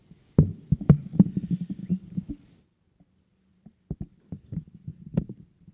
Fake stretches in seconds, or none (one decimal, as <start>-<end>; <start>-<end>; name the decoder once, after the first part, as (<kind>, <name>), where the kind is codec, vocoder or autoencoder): 3.5-4.4 (vocoder, BigVGAN v2)